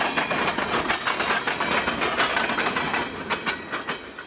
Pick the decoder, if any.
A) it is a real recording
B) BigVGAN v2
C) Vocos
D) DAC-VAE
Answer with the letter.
A